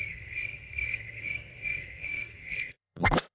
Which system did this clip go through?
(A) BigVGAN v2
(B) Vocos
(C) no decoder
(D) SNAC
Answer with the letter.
D